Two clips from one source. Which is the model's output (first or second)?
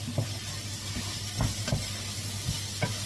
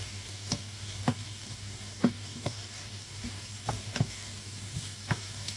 second